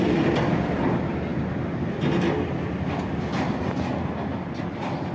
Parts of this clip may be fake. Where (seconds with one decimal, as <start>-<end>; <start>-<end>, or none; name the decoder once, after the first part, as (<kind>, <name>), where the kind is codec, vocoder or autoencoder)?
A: none